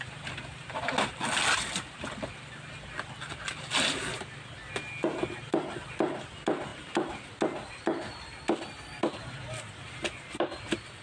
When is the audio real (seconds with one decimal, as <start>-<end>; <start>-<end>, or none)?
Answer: 0.0-11.0